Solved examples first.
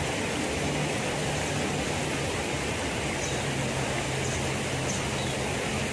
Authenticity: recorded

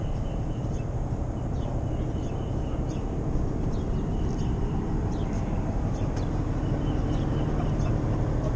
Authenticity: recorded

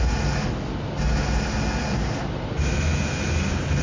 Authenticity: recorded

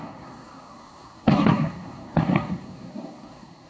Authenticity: remade